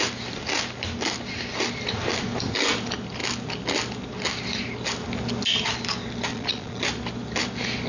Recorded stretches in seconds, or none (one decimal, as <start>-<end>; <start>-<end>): 0.0-6.3; 6.8-7.9